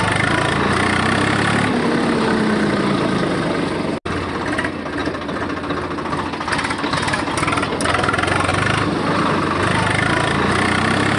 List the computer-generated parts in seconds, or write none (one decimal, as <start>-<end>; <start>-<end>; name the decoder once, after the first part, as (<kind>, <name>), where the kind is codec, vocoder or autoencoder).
5.0-5.7 (vocoder, BigVGAN v2)